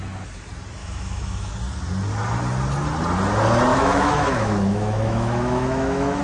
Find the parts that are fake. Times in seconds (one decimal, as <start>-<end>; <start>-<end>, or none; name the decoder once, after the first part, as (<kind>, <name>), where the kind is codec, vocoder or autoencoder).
0.8-1.5 (autoencoder, DAC-VAE); 3.7-6.2